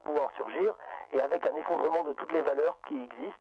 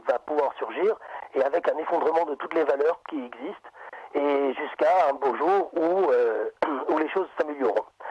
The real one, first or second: second